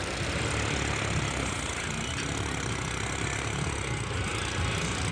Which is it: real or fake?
real